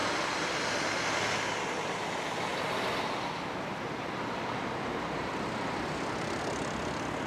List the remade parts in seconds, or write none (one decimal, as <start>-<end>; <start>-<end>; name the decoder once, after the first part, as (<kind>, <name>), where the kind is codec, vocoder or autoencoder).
0.0-0.5 (vocoder, BigVGAN v2); 2.5-6.4

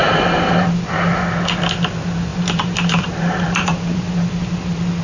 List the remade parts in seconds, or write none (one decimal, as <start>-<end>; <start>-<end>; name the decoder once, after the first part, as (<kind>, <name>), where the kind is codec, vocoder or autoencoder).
0.0-0.5 (vocoder, BigVGAN v2); 2.3-4.1